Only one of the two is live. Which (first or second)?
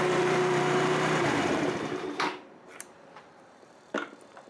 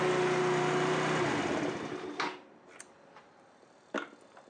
second